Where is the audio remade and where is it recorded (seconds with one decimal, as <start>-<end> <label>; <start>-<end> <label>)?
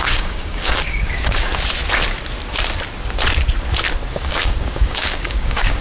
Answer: 0.0-1.5 remade; 1.5-4.1 recorded; 4.1-5.8 remade